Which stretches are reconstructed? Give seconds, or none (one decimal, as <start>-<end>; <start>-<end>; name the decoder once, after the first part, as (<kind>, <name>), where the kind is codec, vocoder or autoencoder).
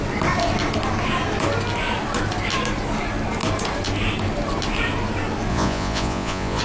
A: 5.5-6.6 (vocoder, Vocos)